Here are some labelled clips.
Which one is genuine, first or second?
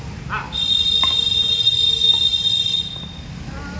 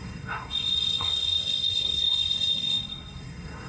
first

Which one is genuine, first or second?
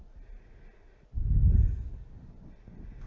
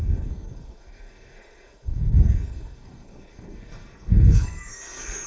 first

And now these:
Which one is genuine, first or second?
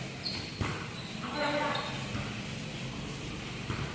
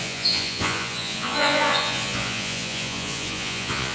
first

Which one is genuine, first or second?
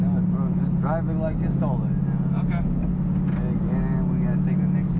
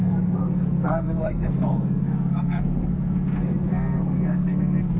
first